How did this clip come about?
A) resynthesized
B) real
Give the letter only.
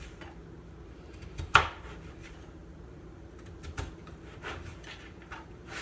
A